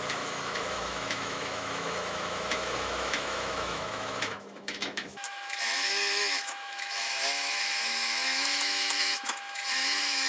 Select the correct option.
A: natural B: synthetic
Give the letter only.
B